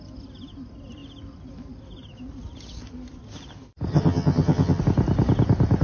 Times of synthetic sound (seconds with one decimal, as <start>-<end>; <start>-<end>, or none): 3.9-4.8